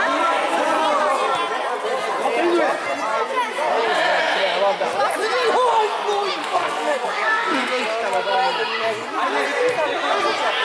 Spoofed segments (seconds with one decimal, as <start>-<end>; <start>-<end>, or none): 6.4-7.8